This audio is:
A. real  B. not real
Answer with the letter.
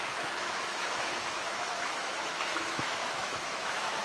B